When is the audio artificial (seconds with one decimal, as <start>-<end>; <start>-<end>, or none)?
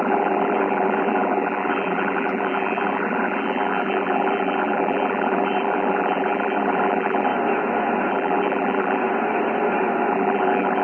0.0-7.3; 8.1-9.0; 10.1-10.8